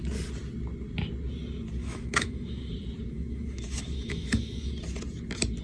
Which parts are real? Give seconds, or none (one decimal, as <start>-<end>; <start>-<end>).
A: 0.0-1.8; 2.7-3.1; 4.7-5.6